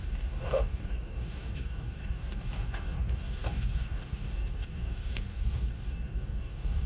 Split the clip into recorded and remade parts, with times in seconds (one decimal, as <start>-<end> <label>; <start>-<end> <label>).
0.0-6.9 remade